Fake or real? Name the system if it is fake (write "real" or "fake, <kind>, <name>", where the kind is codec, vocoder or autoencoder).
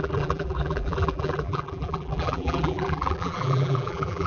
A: fake, vocoder, BigVGAN v2